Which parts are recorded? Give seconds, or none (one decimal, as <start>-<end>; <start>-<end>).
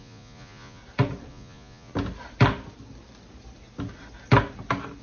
0.8-1.3; 1.9-5.0